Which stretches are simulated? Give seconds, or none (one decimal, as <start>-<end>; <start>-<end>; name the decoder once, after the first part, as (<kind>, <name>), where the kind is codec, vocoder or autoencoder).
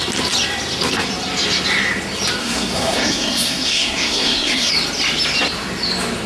2.4-4.7 (codec, SNAC)